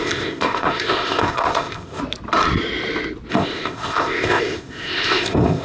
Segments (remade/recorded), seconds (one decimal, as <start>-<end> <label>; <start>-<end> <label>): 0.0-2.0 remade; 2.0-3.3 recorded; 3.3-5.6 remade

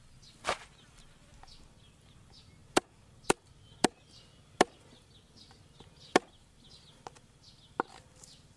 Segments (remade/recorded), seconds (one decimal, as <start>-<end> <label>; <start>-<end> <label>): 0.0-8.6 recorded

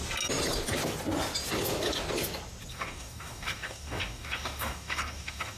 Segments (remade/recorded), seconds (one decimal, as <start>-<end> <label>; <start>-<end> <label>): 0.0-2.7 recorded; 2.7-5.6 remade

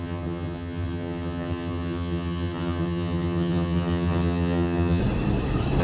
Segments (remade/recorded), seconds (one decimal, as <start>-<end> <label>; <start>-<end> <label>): 0.0-5.0 remade; 5.0-5.8 recorded

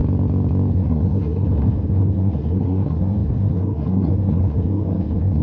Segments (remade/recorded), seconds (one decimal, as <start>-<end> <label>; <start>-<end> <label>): 0.0-0.7 recorded; 0.7-5.4 remade

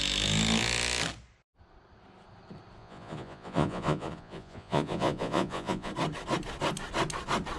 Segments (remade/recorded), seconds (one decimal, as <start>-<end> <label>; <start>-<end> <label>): 0.0-2.8 recorded; 2.8-5.9 remade; 5.9-7.6 recorded